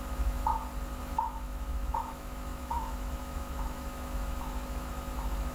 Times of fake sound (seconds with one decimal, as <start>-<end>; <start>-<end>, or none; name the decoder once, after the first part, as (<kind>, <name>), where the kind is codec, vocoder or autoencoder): 0.0-0.5 (autoencoder, DAC-VAE); 1.0-5.5